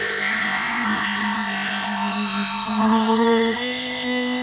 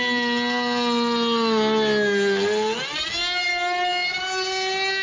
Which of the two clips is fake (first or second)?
first